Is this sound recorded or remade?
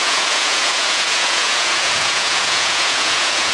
remade